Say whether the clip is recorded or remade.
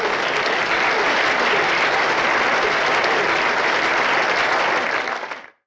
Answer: recorded